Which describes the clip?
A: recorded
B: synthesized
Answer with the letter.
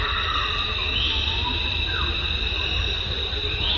A